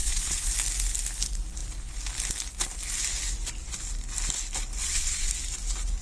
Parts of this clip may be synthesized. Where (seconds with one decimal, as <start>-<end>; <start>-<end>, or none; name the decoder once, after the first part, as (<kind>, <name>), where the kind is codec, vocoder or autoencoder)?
0.0-0.5 (vocoder, Vocos); 4.8-5.3